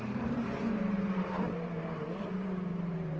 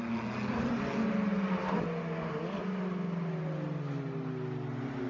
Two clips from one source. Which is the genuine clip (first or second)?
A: second